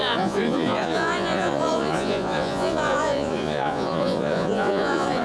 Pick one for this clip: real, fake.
fake